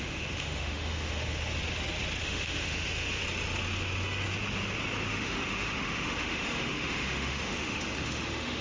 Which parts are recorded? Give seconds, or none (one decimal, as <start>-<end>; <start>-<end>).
1.4-2.2; 3.2-5.1